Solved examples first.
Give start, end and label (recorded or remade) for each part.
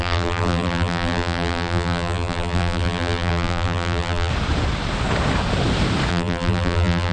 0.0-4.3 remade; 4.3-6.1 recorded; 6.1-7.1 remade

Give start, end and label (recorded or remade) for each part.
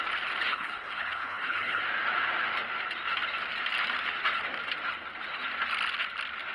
0.0-0.5 recorded; 0.5-1.8 remade; 1.8-6.5 recorded